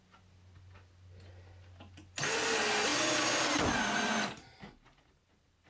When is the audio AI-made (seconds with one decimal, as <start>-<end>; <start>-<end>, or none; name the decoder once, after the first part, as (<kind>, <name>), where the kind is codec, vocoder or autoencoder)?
none